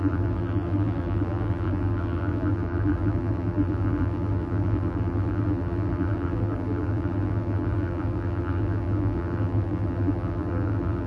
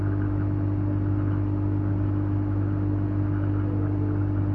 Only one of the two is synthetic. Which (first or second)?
first